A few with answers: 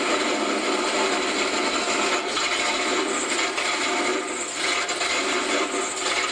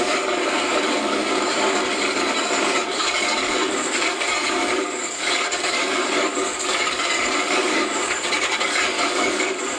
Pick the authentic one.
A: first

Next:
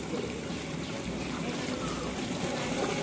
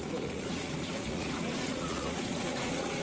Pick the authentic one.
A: first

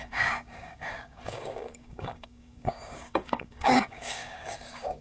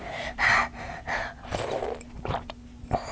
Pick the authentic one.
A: second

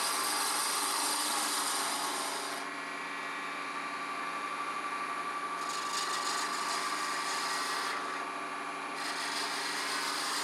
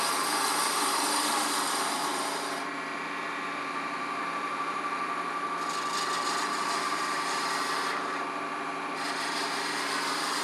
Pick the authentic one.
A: first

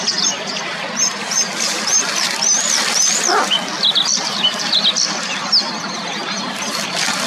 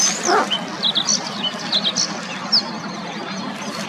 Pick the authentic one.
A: second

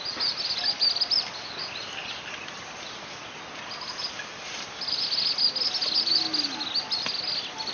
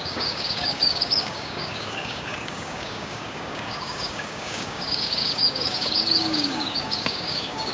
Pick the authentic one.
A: first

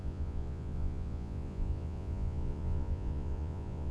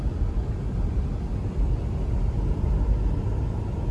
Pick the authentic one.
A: second